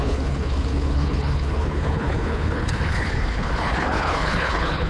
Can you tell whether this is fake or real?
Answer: fake